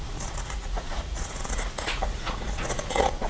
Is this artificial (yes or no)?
yes